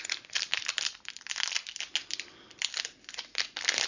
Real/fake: real